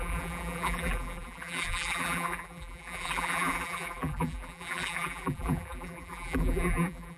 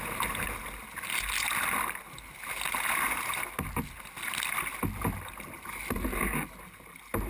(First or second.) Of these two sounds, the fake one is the first